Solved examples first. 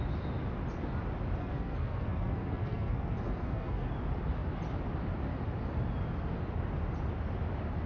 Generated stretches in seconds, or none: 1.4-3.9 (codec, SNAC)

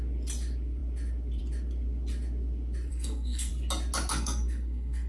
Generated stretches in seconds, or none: 2.9-3.5 (codec, SNAC); 4.1-5.1

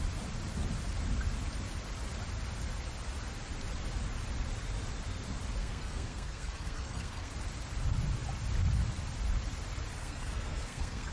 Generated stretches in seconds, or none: 5.6-7.3 (codec, SNAC); 10.0-11.1

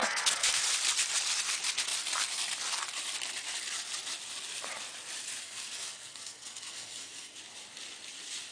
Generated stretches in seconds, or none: 0.0-0.6 (codec, SNAC); 5.4-7.4

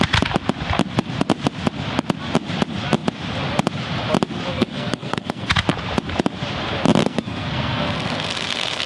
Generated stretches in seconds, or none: 4.5-5.5 (codec, SNAC); 7.0-8.9